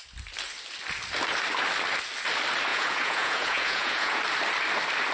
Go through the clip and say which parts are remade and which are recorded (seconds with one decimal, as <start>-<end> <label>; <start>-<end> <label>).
0.0-2.7 recorded; 2.7-4.2 remade; 4.2-5.1 recorded